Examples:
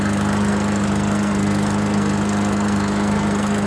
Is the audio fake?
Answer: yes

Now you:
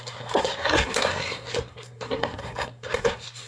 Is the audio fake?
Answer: yes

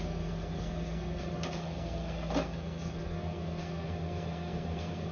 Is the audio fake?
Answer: yes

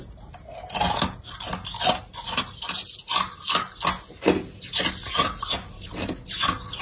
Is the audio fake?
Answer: no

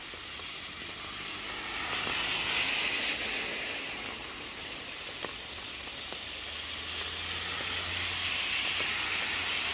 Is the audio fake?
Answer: no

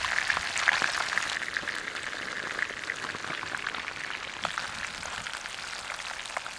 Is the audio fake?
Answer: no